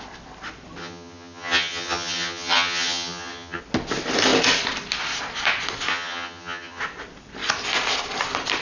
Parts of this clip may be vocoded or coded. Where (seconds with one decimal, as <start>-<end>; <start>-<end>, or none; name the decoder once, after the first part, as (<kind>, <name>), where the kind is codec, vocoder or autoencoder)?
0.8-3.6 (vocoder, HiFi-GAN); 5.9-6.8